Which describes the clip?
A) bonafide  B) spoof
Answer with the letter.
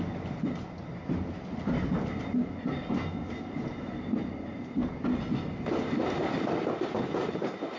A